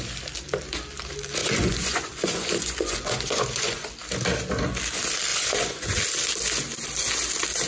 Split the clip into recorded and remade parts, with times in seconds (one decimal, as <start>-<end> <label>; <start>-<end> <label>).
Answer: 0.0-1.4 recorded; 1.4-3.9 remade; 3.9-5.3 recorded; 5.3-6.0 remade; 6.0-7.7 recorded